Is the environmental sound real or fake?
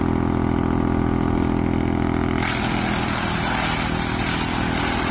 real